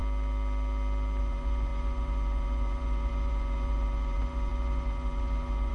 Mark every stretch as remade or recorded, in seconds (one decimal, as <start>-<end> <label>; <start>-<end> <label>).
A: 0.0-1.2 recorded; 1.2-5.7 remade